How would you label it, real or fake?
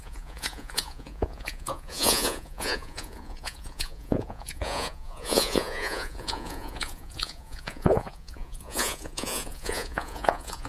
fake